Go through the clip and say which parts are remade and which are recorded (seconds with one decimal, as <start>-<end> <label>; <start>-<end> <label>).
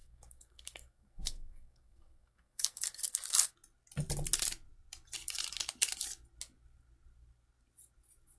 0.0-3.5 remade; 3.5-8.4 recorded